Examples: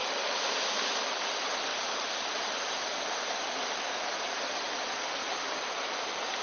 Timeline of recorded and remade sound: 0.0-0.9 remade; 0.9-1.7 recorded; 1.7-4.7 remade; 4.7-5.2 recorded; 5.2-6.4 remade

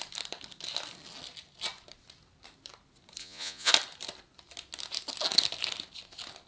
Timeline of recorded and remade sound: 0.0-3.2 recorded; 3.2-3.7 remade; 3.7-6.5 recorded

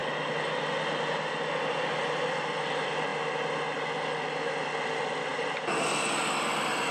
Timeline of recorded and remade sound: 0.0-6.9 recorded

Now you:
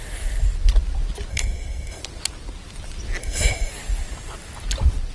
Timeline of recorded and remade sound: 0.0-1.3 recorded; 1.3-2.0 remade; 2.0-3.2 recorded; 3.2-3.7 remade; 3.7-5.1 recorded

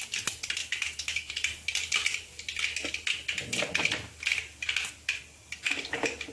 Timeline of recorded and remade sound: 0.0-0.6 recorded; 0.6-1.3 remade; 1.3-6.3 recorded